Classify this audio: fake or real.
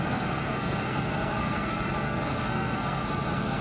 fake